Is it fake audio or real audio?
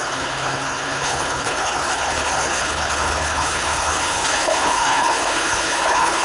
fake